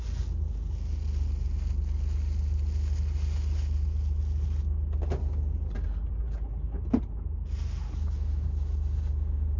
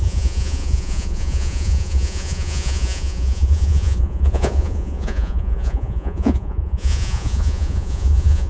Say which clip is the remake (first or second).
second